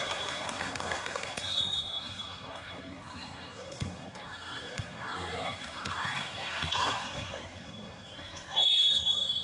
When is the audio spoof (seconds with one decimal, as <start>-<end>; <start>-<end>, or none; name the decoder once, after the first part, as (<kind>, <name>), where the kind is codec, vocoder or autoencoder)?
0.0-9.4 (codec, SNAC)